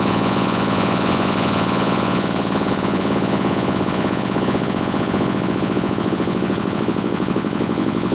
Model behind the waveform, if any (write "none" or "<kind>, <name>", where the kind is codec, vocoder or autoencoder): vocoder, Vocos